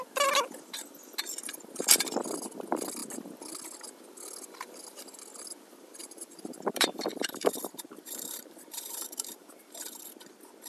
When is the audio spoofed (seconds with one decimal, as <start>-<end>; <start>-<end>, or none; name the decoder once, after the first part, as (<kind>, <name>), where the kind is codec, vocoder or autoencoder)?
6.0-10.0 (vocoder, BigVGAN v2)